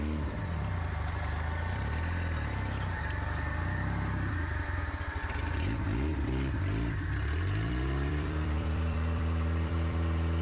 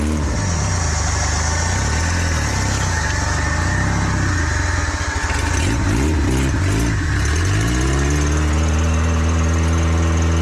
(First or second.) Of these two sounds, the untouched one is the second